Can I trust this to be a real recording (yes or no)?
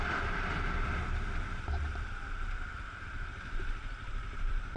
no